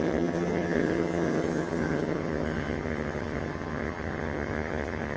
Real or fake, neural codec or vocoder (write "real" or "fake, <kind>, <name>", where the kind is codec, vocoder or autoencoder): fake, vocoder, HiFi-GAN